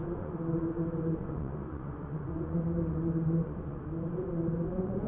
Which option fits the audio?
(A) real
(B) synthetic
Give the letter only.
B